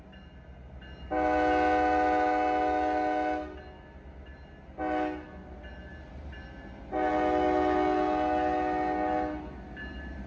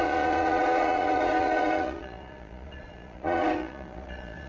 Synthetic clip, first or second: second